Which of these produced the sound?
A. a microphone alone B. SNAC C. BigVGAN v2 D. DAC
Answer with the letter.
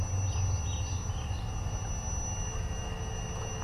A